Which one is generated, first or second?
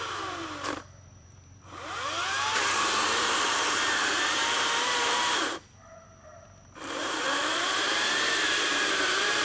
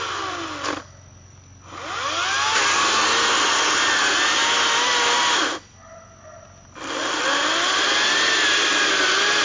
first